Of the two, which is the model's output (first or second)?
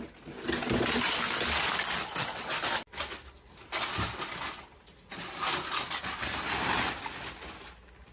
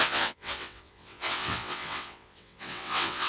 second